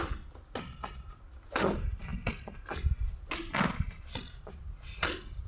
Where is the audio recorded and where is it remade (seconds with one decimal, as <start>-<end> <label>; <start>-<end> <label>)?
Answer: 0.0-5.5 recorded